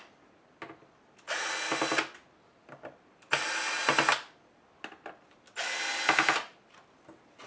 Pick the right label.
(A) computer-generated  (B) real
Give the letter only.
B